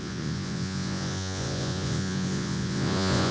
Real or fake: fake